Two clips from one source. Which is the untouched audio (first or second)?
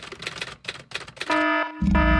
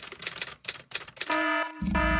first